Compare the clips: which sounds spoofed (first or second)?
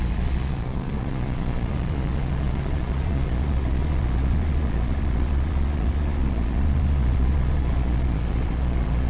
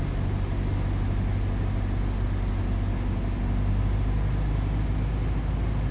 first